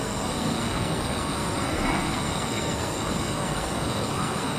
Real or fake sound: fake